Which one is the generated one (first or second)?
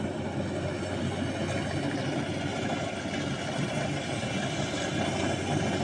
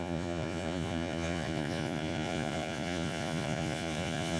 second